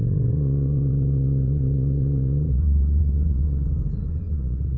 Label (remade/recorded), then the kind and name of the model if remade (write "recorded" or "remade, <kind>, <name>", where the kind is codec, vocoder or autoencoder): remade, vocoder, Vocos